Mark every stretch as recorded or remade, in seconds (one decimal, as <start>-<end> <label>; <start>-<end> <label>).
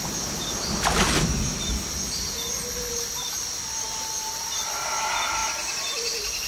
0.0-6.5 recorded